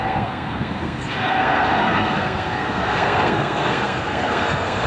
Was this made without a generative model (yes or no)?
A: no